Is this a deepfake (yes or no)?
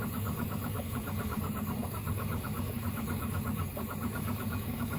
yes